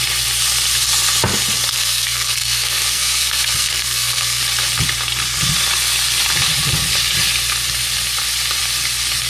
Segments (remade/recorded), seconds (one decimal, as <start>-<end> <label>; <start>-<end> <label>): 0.0-1.7 recorded; 1.7-4.4 remade; 4.4-9.3 recorded